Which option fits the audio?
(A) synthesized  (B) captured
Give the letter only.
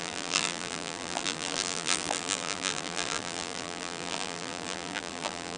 A